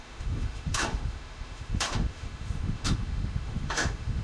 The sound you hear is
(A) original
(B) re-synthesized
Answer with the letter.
B